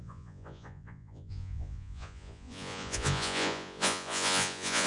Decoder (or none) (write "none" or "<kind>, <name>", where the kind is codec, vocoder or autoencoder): vocoder, Vocos